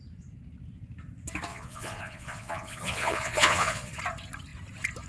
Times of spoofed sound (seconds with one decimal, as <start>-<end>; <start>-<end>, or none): 1.5-4.0